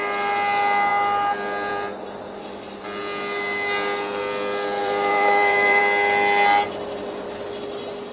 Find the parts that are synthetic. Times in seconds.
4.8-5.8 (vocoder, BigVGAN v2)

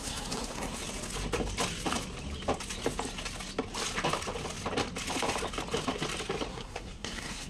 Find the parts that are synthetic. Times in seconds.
0.0-0.8 (codec, SNAC); 6.5-7.5

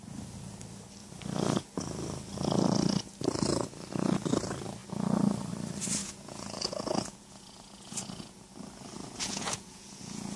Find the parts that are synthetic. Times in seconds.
6.0-8.5 (vocoder, Vocos); 9.0-10.4

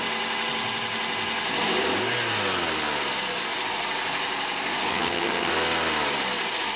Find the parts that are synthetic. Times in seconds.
4.9-5.5 (vocoder, HiFi-GAN)

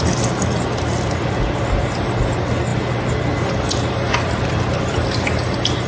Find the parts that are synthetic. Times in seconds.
none